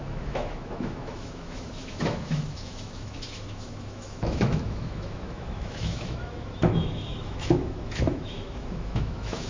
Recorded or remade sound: remade